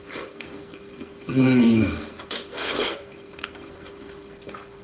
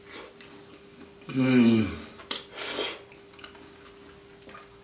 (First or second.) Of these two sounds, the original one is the second